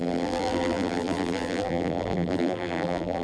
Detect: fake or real fake